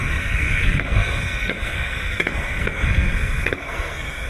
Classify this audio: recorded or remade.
remade